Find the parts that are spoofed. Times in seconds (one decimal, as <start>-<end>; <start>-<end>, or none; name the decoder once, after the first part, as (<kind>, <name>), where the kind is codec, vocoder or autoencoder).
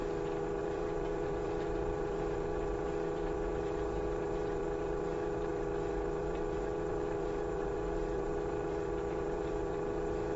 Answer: 0.6-5.5 (vocoder, BigVGAN v2); 6.2-10.4